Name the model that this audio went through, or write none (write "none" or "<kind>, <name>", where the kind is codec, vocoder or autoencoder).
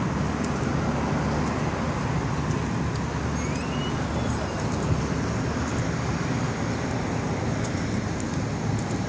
none